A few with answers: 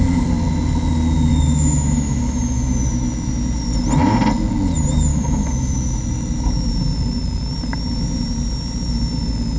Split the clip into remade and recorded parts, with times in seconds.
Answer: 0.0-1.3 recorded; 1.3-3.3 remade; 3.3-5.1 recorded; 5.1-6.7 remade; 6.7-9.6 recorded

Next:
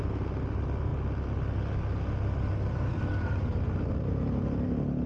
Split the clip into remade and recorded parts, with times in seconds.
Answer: 0.0-5.1 recorded

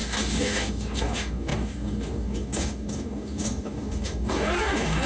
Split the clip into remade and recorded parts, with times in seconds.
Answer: 0.0-5.1 remade

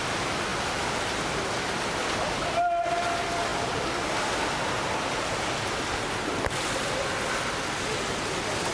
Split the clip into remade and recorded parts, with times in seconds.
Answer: 0.0-8.7 recorded

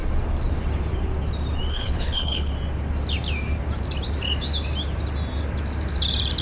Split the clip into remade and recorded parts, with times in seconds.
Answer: 0.0-1.7 recorded; 1.7-2.5 remade; 2.5-6.4 recorded

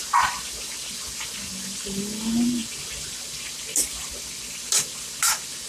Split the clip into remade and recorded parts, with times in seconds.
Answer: 0.0-5.7 recorded